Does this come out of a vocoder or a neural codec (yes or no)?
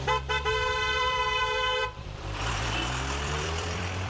yes